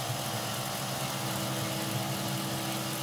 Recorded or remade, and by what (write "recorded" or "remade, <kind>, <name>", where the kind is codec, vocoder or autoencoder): recorded